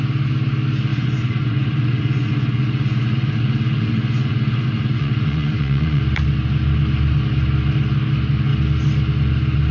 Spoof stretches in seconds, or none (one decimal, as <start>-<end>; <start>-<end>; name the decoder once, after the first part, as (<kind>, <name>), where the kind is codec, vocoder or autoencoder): 0.9-6.0 (vocoder, Vocos)